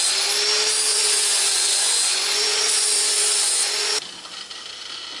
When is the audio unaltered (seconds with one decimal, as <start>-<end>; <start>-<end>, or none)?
0.0-0.9; 4.0-5.2